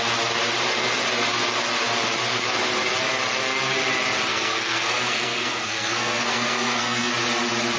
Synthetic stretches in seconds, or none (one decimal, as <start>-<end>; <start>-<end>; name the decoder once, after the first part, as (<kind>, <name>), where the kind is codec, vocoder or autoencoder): 4.3-7.1 (codec, SNAC)